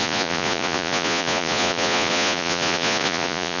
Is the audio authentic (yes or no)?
no